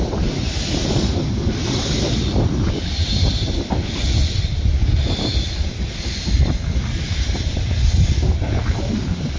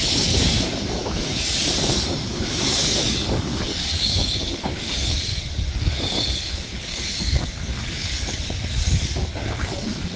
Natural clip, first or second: first